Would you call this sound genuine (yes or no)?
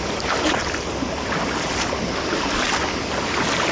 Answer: yes